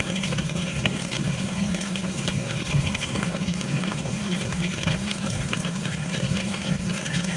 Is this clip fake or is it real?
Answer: fake